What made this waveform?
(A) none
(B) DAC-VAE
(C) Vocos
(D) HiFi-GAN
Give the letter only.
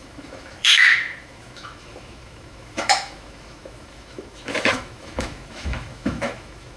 B